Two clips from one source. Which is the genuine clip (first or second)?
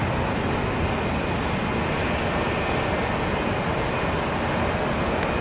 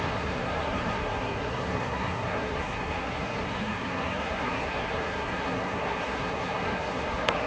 first